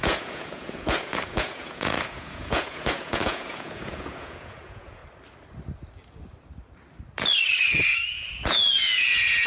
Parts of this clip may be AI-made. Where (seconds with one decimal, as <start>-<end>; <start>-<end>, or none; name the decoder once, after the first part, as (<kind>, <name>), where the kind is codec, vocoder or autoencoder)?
0.0-5.0 (vocoder, Vocos); 7.7-9.5

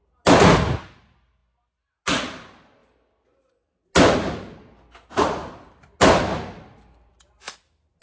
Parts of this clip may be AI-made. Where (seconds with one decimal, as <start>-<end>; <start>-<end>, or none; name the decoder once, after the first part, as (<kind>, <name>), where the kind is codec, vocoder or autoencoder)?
none

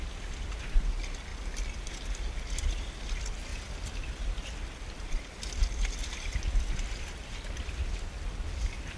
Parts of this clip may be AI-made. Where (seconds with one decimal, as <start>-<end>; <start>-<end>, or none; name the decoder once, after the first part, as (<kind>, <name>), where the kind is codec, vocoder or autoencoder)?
none

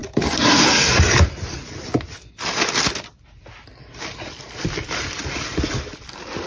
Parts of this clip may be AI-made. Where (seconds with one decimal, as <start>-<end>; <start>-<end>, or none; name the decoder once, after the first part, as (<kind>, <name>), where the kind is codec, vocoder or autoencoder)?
none

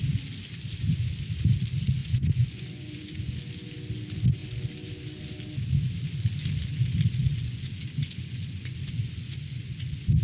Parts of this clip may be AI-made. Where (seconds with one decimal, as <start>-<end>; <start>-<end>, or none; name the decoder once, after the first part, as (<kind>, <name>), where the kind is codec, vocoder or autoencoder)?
2.0-3.4 (vocoder, Vocos); 7.2-10.2

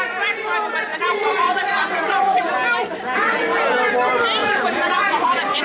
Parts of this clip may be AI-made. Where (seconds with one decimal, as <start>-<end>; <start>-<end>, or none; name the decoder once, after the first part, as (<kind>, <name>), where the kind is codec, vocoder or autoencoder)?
0.9-2.4 (vocoder, Vocos); 4.4-5.6